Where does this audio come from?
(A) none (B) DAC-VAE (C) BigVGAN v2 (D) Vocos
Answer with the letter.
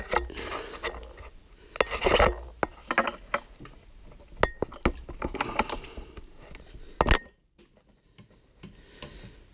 A